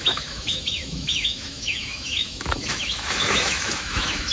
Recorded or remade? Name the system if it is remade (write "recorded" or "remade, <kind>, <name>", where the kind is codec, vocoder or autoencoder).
remade, autoencoder, DAC-VAE